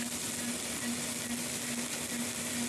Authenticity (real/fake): real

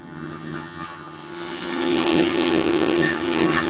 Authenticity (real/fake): fake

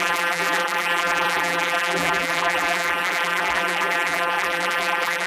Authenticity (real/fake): fake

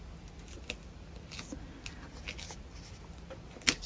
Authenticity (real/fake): real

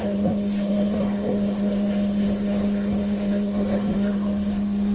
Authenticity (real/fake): fake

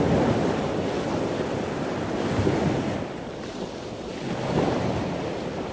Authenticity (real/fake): fake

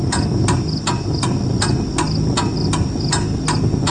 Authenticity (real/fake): real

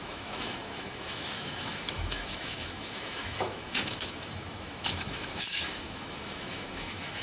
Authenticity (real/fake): fake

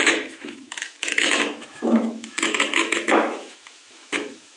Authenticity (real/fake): fake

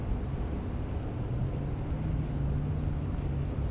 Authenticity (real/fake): real